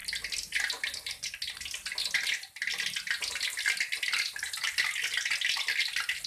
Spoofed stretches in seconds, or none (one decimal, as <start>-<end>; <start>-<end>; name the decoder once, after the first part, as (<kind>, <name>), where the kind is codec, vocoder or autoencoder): none